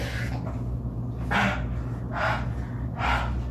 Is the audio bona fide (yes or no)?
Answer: yes